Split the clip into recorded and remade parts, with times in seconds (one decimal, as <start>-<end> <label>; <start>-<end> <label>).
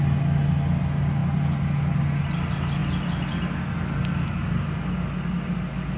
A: 0.0-6.0 recorded